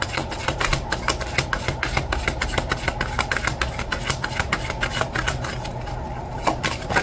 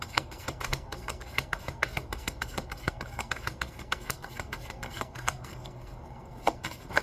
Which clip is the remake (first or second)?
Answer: second